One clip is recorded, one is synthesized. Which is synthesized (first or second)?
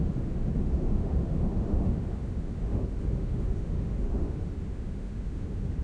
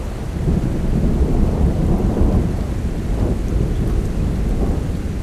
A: first